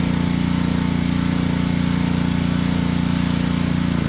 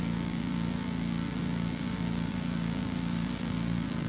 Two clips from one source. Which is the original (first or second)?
first